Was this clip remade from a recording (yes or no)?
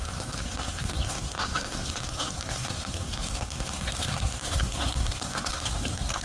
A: yes